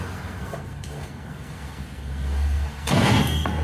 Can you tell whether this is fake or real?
fake